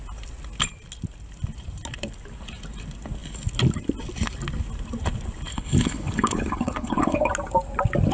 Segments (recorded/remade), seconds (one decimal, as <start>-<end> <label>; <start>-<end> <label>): 0.0-5.5 recorded; 5.5-7.3 remade; 7.3-8.1 recorded